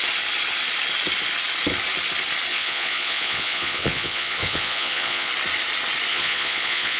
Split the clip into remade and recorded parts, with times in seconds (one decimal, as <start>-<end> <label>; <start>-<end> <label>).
0.0-2.5 recorded; 2.5-5.3 remade; 5.3-6.1 recorded; 6.1-7.0 remade